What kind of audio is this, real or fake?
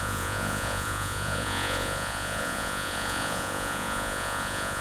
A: fake